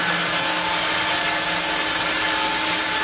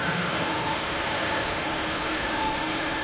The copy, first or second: second